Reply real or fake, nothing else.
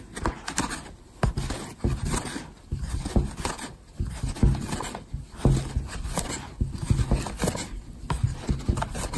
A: real